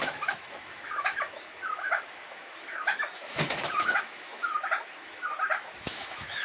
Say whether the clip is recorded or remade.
remade